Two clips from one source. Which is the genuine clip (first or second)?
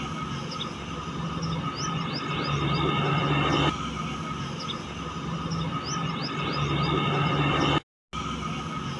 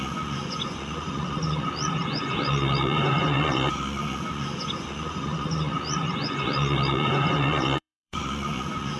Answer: first